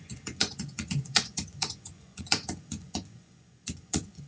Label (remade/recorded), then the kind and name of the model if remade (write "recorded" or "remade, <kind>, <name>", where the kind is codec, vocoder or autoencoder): remade, vocoder, Vocos